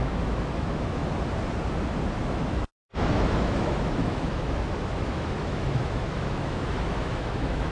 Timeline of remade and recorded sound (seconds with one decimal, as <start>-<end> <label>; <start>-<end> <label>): 0.0-1.0 remade; 1.0-2.2 recorded; 2.2-7.7 remade

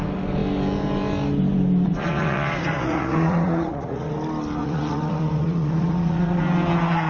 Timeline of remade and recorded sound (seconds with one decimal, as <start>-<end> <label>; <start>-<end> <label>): 0.0-1.9 recorded; 1.9-4.1 remade; 4.1-4.6 recorded; 4.6-6.4 remade; 6.4-7.1 recorded

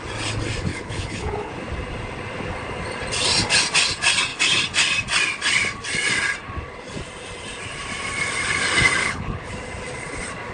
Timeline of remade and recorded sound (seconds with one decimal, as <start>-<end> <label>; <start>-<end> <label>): 0.0-0.7 recorded; 0.7-1.5 remade; 1.5-9.0 recorded; 9.0-9.5 remade; 9.5-10.5 recorded

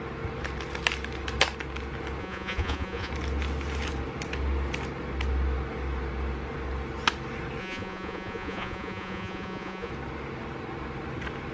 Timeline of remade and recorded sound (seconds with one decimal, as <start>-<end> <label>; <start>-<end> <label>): 0.0-2.2 recorded; 2.2-3.1 remade; 3.1-7.6 recorded; 7.6-9.9 remade; 9.9-11.5 recorded

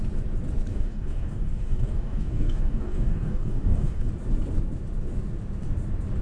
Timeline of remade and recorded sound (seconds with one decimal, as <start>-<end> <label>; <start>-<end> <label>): 0.0-0.7 recorded; 0.7-4.1 remade; 4.1-6.2 recorded

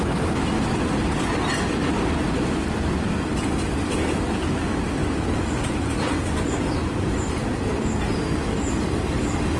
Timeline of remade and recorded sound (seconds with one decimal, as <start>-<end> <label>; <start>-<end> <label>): 0.0-5.0 recorded; 5.0-5.5 remade; 5.5-9.6 recorded